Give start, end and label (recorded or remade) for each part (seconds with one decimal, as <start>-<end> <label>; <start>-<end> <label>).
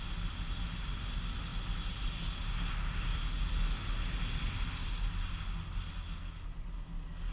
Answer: 0.0-7.3 recorded